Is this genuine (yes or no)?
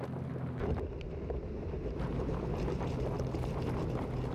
yes